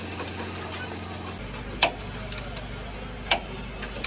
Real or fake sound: real